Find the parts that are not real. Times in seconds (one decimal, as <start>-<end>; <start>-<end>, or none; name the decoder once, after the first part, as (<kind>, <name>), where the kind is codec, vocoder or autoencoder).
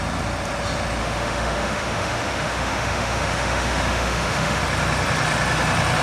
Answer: 1.0-4.6 (autoencoder, DAC-VAE)